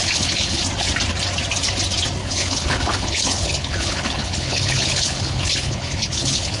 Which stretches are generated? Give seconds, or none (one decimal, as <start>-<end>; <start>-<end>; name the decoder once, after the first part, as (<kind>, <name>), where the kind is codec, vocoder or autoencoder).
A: 0.0-0.6 (codec, HILCodec); 2.2-6.6